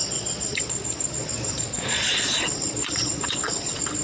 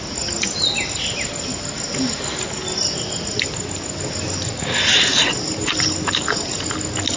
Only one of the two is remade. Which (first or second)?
first